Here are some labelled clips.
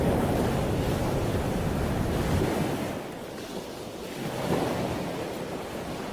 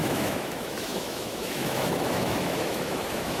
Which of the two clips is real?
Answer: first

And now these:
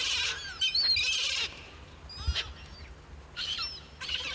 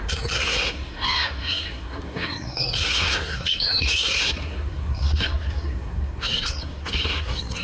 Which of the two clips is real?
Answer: first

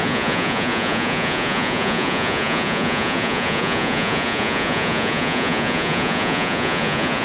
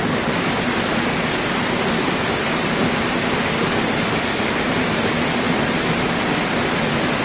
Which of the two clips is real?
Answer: second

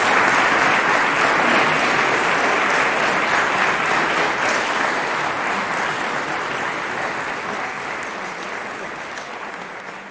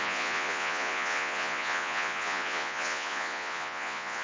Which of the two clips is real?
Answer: first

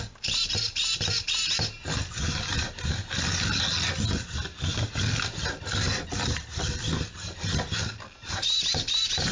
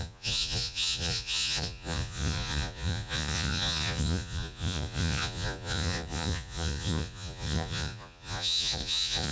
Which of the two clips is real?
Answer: first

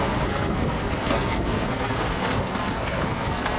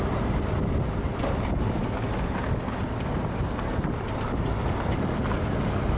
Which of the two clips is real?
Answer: second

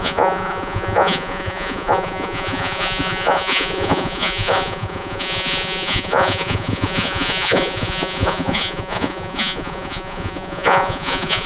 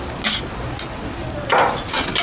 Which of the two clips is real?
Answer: second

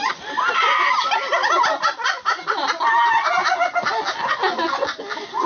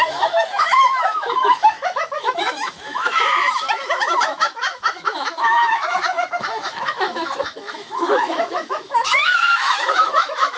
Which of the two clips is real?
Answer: first